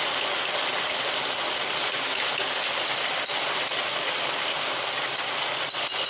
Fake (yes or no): no